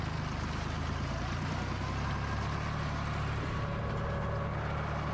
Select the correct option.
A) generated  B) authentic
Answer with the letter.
B